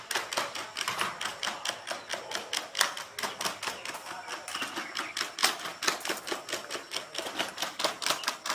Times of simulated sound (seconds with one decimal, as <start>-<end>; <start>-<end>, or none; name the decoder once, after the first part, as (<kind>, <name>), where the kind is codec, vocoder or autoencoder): none